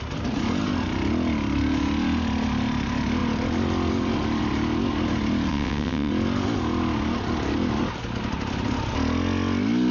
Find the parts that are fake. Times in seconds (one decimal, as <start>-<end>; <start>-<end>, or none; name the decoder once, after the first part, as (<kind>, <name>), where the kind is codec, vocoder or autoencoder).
5.5-6.1 (vocoder, WaveNeXt)